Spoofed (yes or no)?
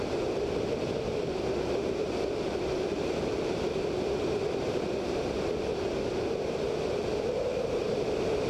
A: yes